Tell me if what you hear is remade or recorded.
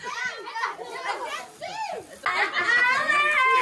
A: recorded